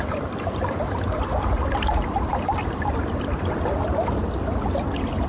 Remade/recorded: recorded